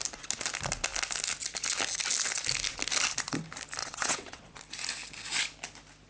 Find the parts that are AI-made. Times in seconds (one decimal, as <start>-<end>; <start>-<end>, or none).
3.8-4.6